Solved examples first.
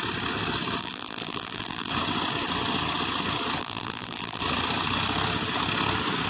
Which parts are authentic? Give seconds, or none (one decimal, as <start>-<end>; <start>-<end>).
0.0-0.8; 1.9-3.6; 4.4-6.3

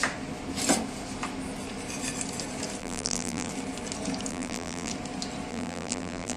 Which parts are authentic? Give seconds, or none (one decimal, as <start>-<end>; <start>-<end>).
0.0-2.8; 3.5-4.3; 4.9-5.5

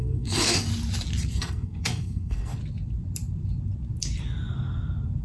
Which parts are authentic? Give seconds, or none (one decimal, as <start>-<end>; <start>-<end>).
0.7-1.3; 2.6-5.2

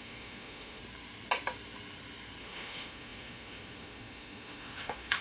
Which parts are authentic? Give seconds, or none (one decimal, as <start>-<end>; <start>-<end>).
0.8-2.4

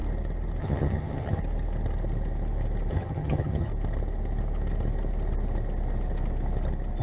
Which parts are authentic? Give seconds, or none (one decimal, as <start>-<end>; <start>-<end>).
0.0-0.6; 1.4-2.9; 3.7-7.0